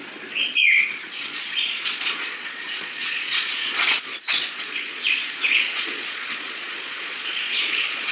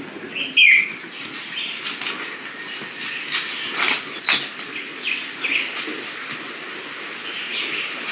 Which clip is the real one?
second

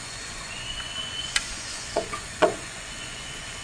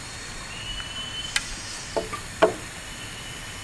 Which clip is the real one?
second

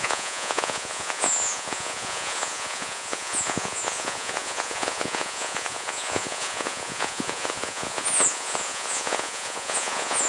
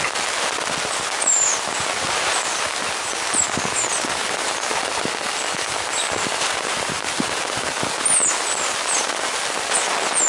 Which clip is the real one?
second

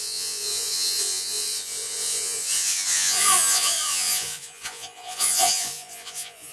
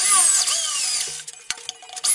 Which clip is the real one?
second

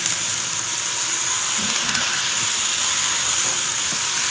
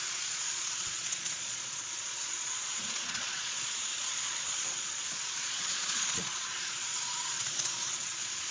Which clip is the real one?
first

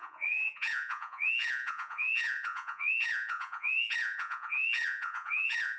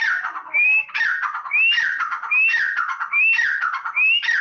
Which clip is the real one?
second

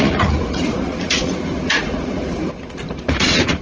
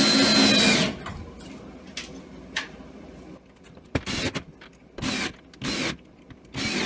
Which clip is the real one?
second